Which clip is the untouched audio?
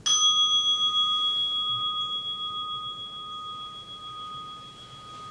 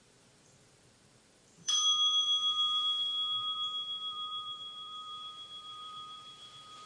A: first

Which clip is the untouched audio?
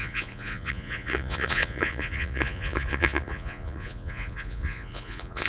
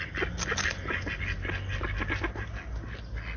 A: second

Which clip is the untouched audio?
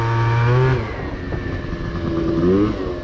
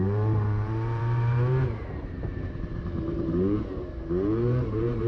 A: first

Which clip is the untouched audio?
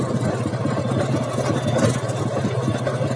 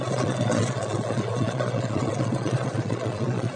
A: first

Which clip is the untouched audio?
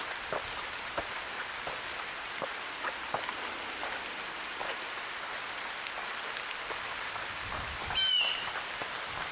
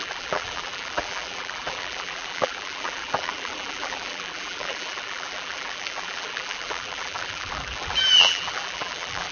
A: first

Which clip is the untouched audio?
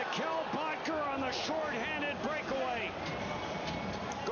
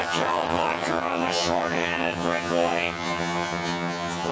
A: first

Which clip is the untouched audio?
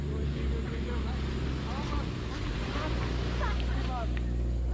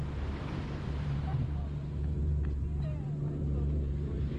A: first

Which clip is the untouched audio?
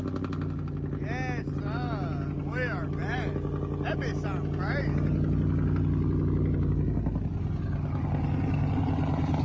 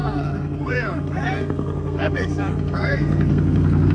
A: first